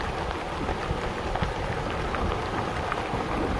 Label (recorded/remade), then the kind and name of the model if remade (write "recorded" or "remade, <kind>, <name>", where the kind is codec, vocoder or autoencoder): recorded